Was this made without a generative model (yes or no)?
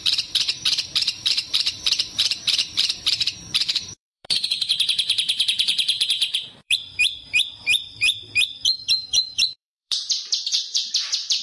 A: no